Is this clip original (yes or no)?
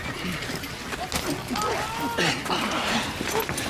yes